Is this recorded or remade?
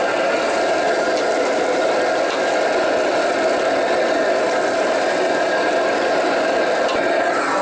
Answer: recorded